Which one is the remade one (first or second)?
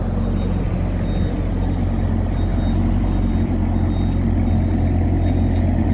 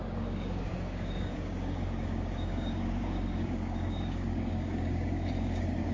second